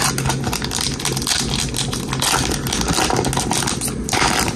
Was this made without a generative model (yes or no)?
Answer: yes